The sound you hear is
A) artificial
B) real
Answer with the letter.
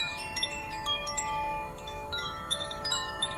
A